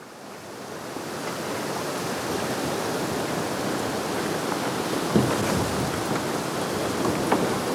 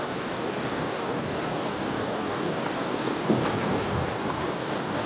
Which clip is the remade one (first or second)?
second